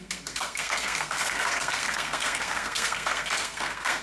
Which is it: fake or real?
fake